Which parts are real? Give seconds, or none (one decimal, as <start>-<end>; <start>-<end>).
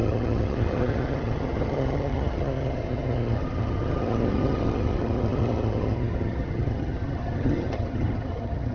none